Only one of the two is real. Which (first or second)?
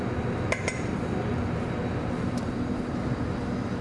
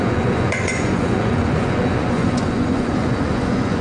first